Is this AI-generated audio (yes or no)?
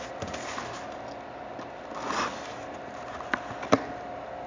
no